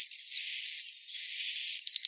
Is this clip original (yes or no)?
yes